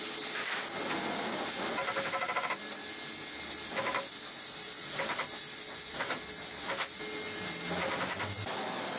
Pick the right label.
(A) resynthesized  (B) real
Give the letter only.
B